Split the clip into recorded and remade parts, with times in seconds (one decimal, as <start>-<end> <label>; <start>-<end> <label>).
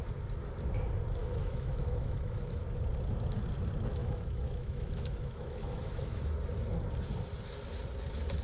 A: 0.0-1.2 recorded; 1.2-2.6 remade; 2.6-4.0 recorded; 4.0-6.3 remade; 6.3-8.4 recorded